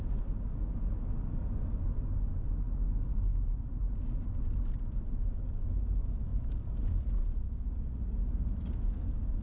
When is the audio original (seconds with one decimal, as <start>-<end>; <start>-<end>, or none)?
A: 0.0-3.3; 4.8-6.3; 7.4-8.2; 8.7-9.4